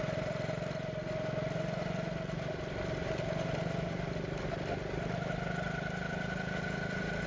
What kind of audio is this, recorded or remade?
recorded